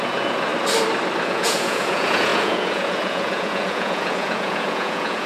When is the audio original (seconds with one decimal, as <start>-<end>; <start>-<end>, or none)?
0.5-1.2